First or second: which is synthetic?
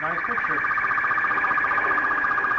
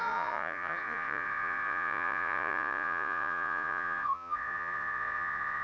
second